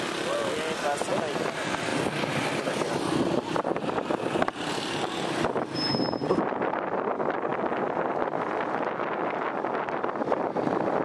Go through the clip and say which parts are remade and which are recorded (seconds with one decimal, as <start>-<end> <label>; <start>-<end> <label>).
0.0-11.0 recorded